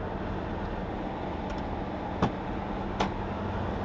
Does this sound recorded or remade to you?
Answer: recorded